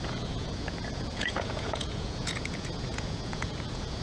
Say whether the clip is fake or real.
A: fake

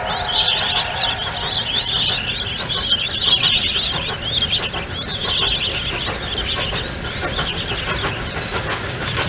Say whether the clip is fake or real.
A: real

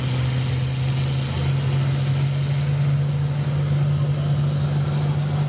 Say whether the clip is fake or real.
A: real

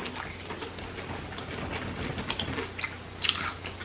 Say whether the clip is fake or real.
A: real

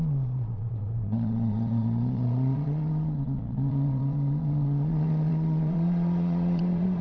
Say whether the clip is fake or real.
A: fake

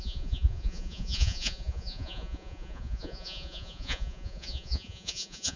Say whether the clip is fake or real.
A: fake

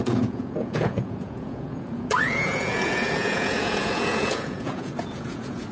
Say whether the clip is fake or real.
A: fake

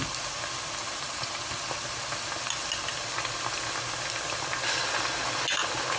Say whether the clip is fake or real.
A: real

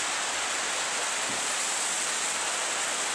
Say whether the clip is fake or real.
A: real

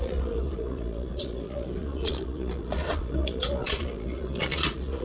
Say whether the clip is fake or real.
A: fake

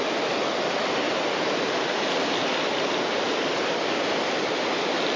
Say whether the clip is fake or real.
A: real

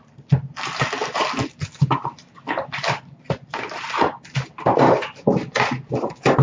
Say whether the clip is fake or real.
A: real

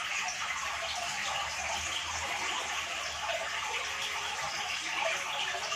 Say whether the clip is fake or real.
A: real